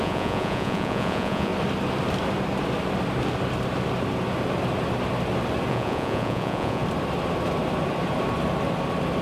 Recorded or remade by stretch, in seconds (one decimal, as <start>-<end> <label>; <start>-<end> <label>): 0.0-1.5 remade; 1.5-5.7 recorded; 5.7-6.8 remade; 6.8-9.2 recorded